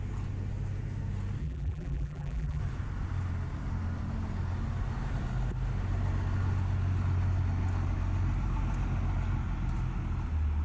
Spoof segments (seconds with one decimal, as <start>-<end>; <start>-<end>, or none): 1.4-2.6